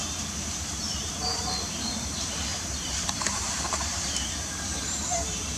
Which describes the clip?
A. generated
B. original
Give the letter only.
A